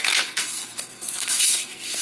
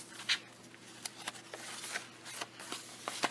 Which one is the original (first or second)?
second